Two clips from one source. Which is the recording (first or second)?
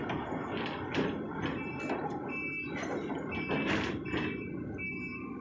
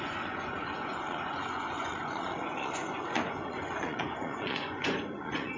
first